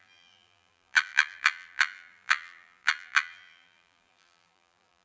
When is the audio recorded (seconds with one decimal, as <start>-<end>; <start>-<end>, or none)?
none